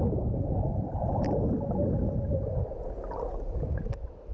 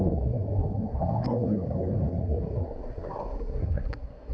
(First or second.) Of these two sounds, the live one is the first